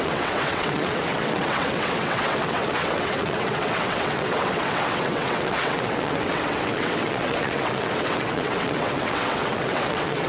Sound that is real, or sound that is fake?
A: fake